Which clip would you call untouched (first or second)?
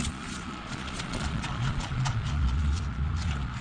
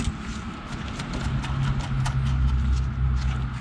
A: second